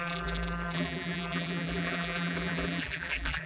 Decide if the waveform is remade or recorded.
remade